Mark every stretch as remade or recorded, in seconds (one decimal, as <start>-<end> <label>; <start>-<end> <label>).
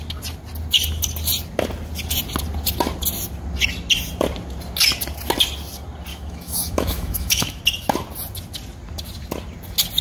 0.0-6.1 recorded; 6.1-7.6 remade; 7.6-10.0 recorded